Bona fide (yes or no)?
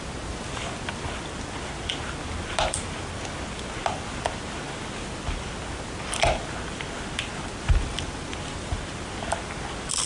yes